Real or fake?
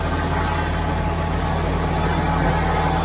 real